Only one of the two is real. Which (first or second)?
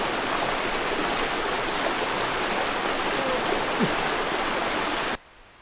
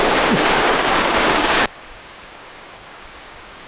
first